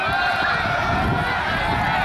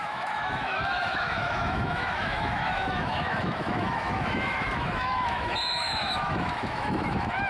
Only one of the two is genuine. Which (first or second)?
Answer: first